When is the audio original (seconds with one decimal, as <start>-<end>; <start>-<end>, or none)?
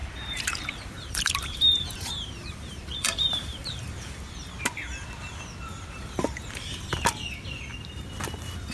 4.5-5.7; 6.9-8.7